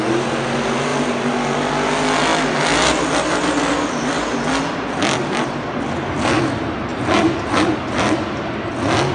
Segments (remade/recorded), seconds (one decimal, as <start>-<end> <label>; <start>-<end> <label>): 0.0-0.9 recorded; 0.9-1.7 remade; 1.7-9.1 recorded